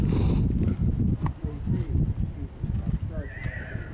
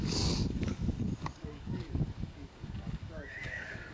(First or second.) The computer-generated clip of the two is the second